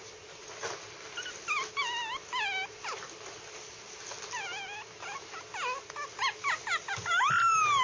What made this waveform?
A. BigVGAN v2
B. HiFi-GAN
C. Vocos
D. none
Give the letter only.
D